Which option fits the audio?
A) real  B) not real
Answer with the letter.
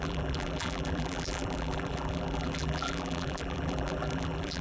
B